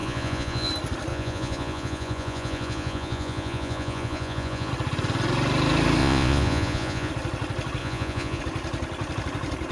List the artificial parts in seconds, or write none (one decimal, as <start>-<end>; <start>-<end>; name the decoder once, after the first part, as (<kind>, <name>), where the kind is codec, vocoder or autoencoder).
0.0-0.7 (vocoder, Vocos); 1.1-4.7; 6.0-7.1; 7.8-8.4